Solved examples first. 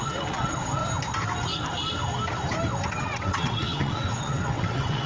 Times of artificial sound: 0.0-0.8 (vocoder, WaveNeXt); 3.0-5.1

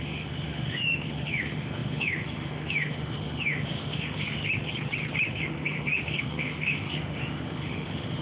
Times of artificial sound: 0.0-4.4 (autoencoder, DAC-VAE); 5.4-8.2

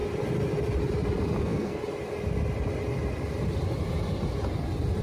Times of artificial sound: 1.4-1.8 (codec, SNAC)

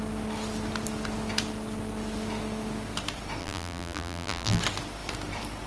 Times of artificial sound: 3.4-4.6 (vocoder, BigVGAN v2)

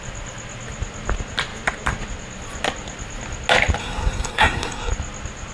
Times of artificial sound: 3.8-4.9 (codec, SNAC)